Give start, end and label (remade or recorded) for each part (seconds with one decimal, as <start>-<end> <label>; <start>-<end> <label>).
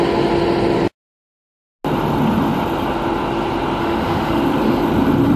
0.0-3.8 recorded; 3.8-4.4 remade; 4.4-5.4 recorded